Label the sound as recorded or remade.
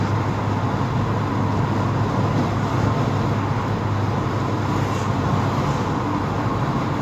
recorded